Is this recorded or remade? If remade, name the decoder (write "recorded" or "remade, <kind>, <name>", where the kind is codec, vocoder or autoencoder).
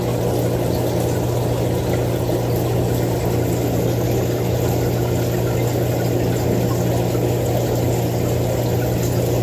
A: recorded